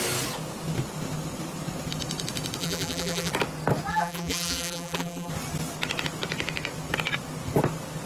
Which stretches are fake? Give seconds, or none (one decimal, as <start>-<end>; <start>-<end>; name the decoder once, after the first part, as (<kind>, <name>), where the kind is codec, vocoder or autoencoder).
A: 2.6-3.3 (vocoder, BigVGAN v2); 3.9-5.3